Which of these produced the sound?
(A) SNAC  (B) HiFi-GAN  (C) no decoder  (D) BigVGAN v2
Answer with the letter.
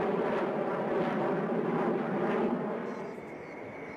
C